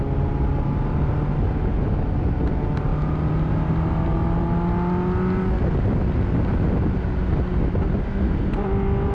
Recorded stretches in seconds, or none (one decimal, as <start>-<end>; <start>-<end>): 0.0-9.1

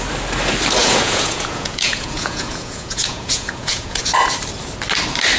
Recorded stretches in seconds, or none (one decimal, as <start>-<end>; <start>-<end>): 0.0-0.8; 4.0-5.4

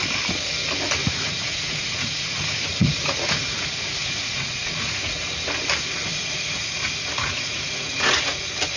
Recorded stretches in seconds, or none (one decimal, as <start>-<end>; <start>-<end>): 0.0-1.0; 5.0-6.1; 8.4-8.8

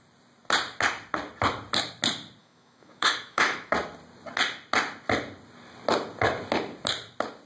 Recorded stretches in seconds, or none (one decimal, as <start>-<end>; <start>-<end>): 0.0-2.4; 3.7-7.5

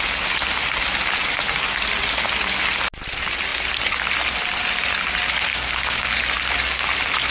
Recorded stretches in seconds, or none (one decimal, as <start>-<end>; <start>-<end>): 0.0-5.5; 6.1-7.3